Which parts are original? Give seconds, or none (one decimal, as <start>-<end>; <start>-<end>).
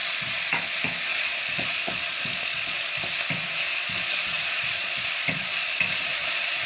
0.7-1.1; 2.8-3.7